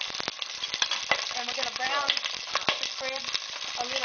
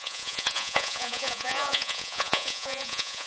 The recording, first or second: first